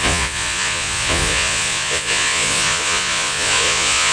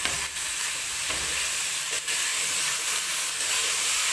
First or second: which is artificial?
first